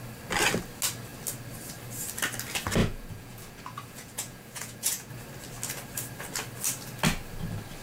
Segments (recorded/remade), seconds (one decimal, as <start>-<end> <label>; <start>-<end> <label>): 0.0-2.8 recorded; 2.8-5.1 remade; 5.1-7.8 recorded